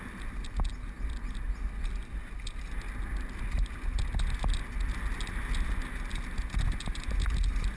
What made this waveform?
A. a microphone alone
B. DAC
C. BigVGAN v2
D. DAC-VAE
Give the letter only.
A